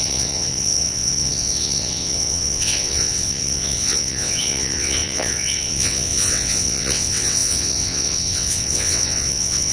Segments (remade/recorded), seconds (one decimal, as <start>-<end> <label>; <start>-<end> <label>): 0.0-9.7 remade

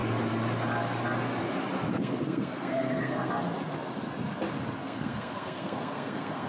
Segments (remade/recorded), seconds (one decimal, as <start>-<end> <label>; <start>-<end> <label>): 0.0-1.9 recorded; 1.9-3.3 remade; 3.3-4.8 recorded; 4.8-6.5 remade

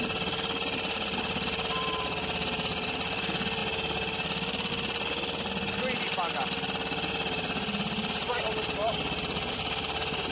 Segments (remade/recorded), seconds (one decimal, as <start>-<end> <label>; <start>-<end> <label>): 0.0-10.3 recorded

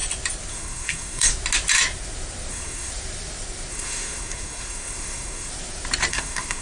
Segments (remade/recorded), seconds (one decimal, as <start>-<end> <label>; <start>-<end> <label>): 0.0-0.5 recorded; 0.5-1.3 remade; 1.3-2.5 recorded; 2.5-2.9 remade; 2.9-3.7 recorded; 3.7-5.5 remade; 5.5-6.1 recorded; 6.1-6.6 remade

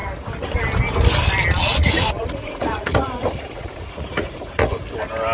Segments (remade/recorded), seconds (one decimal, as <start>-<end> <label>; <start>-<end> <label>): 0.0-1.6 recorded; 1.6-4.8 remade; 4.8-5.3 recorded